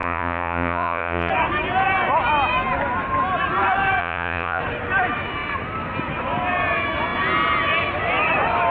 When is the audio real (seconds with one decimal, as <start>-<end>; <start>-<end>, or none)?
1.3-4.0; 4.6-8.7